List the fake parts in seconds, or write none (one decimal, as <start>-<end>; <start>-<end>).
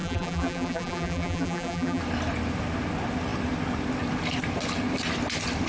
0.0-2.0